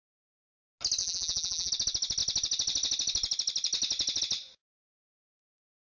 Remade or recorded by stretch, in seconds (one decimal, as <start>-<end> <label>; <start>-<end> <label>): 0.0-1.0 recorded; 1.0-1.7 remade; 1.7-5.8 recorded